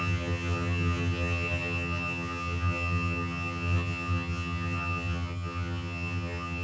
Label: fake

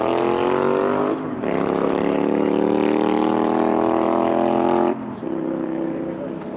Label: real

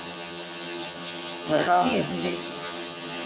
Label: fake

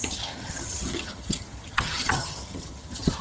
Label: fake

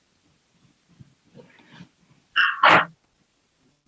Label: real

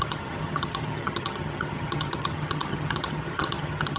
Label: fake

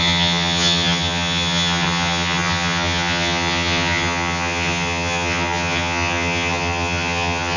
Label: fake